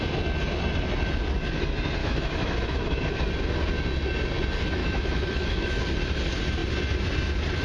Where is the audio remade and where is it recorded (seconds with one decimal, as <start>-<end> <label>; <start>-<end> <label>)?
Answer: 0.0-2.0 recorded; 2.0-3.1 remade; 3.1-4.8 recorded; 4.8-5.8 remade; 5.8-7.6 recorded